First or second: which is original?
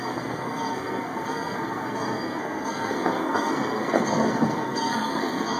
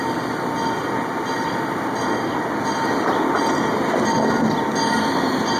second